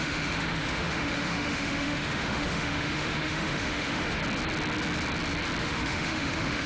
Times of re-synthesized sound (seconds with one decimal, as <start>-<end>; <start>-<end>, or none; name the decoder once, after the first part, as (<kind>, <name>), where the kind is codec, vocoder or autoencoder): 0.0-4.2 (autoencoder, DAC-VAE); 5.6-6.7

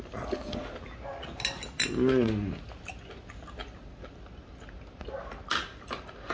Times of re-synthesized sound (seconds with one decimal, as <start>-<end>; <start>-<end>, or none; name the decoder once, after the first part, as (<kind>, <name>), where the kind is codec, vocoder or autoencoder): none